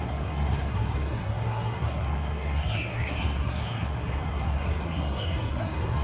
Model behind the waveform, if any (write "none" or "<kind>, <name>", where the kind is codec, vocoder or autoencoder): codec, SNAC